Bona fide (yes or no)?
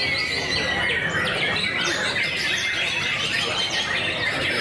yes